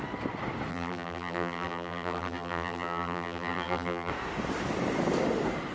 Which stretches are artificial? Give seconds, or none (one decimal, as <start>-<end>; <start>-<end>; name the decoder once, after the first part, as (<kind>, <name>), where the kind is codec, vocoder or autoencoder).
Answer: 0.7-4.1 (vocoder, BigVGAN v2)